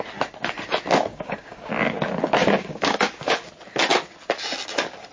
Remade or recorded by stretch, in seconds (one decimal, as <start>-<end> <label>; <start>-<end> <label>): 0.0-1.1 recorded; 1.1-1.7 remade; 1.7-2.4 recorded; 2.4-3.5 remade; 3.5-5.1 recorded